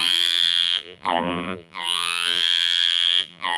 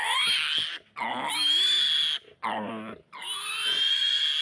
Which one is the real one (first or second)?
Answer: second